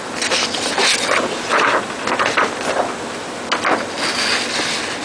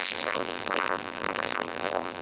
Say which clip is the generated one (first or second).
second